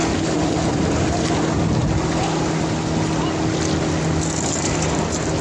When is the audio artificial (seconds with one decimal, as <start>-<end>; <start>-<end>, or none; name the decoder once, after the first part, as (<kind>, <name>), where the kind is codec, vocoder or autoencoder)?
none